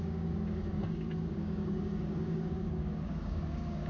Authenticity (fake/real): fake